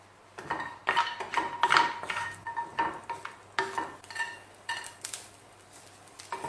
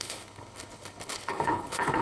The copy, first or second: second